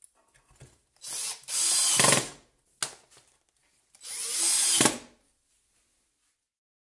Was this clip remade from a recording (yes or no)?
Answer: no